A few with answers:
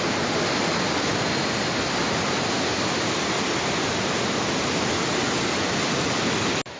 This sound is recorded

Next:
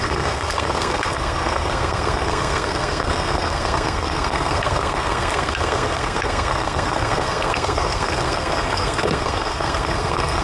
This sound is remade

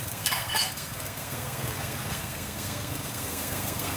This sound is remade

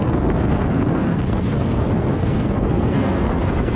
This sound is remade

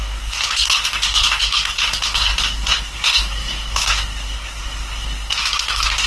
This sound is remade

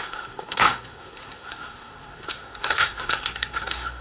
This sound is remade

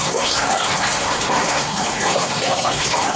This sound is remade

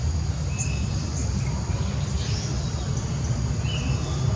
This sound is recorded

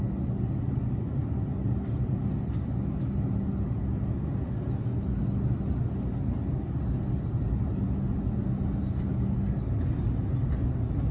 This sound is recorded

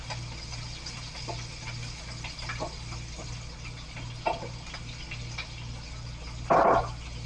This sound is recorded